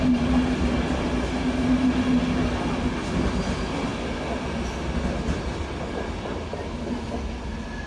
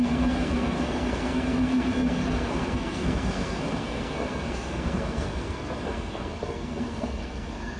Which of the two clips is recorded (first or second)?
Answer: first